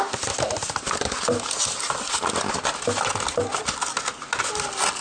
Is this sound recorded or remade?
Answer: recorded